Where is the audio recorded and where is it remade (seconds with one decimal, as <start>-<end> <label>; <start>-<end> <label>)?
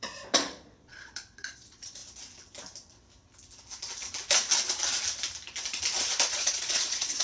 0.0-2.0 remade; 2.0-6.3 recorded; 6.3-7.2 remade